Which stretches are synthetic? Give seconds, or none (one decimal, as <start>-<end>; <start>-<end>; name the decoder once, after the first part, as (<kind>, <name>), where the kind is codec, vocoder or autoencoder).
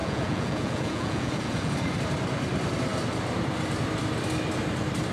0.0-1.7 (vocoder, Vocos)